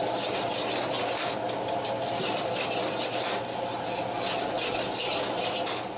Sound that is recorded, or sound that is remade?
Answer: recorded